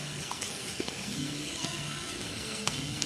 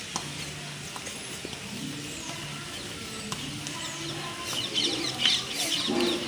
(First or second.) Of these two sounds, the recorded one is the second